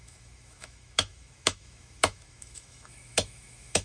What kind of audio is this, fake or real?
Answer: fake